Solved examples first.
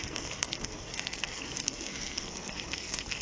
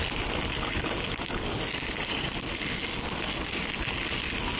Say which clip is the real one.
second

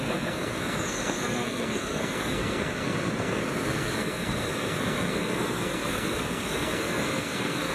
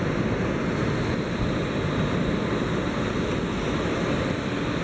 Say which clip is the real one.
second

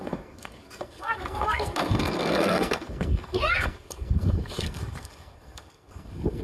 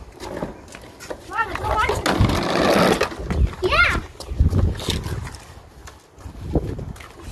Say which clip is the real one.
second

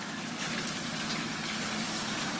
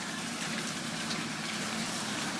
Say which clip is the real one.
first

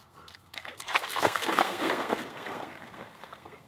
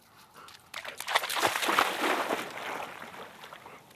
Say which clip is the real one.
second